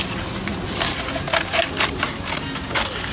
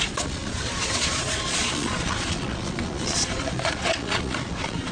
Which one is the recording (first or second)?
first